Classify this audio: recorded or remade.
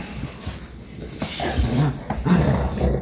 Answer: recorded